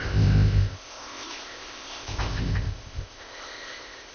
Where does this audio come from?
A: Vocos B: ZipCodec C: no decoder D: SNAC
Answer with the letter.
B